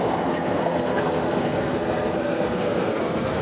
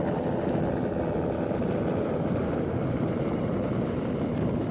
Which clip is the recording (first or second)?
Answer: second